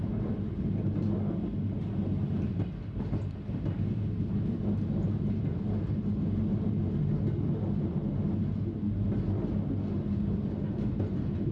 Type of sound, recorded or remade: recorded